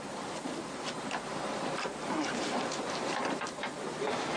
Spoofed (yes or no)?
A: yes